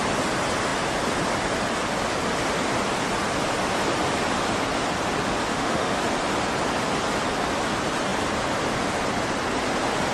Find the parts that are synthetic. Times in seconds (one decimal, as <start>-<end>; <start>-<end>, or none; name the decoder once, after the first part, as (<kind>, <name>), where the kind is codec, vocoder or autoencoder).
5.5-6.0 (autoencoder, DAC-VAE)